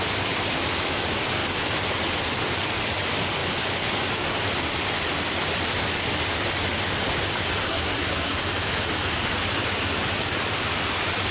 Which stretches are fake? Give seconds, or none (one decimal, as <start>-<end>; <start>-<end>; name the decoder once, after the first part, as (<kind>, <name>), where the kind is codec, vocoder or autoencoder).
7.7-8.4 (codec, SNAC)